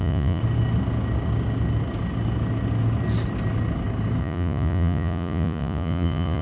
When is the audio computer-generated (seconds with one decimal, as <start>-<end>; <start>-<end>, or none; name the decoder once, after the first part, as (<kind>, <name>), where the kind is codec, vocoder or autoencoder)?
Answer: 0.0-0.4 (vocoder, Vocos); 4.2-6.4